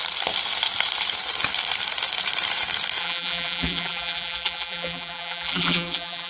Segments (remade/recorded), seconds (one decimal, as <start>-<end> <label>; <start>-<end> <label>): 0.0-3.0 recorded; 3.0-6.3 remade